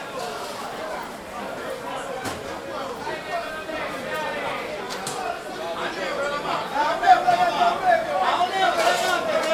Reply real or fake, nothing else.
real